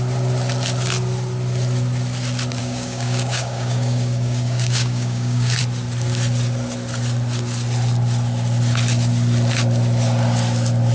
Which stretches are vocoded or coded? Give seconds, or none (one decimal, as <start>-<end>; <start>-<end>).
2.6-5.6